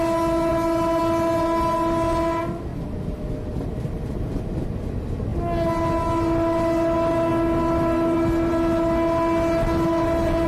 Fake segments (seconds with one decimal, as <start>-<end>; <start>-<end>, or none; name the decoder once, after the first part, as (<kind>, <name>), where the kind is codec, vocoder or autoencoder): none